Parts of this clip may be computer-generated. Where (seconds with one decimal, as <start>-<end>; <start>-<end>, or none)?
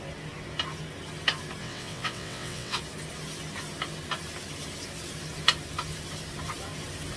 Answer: 1.6-2.8